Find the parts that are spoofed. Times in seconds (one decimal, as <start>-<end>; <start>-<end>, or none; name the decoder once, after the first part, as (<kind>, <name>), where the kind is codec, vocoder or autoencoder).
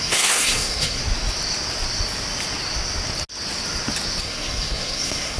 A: 0.0-1.0 (codec, SNAC); 4.2-5.4